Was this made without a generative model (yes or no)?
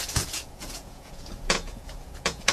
no